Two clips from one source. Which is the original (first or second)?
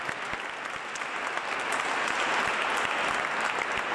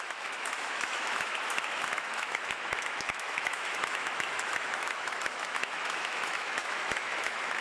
first